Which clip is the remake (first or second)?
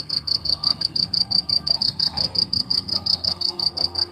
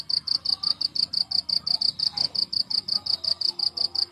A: first